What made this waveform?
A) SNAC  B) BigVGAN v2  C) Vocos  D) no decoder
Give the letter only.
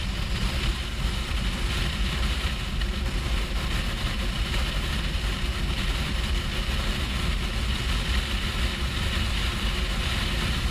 D